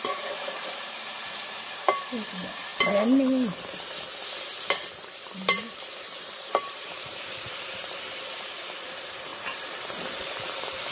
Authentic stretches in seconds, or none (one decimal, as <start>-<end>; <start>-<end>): 2.7-5.2